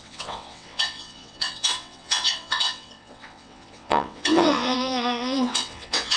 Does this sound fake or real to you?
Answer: fake